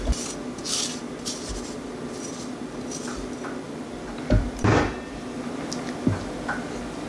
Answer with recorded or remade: recorded